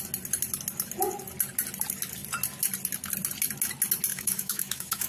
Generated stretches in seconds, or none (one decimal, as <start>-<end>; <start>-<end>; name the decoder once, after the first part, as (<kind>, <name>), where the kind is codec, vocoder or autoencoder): 4.1-5.1 (autoencoder, DAC-VAE)